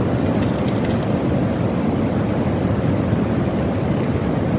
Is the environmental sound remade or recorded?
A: recorded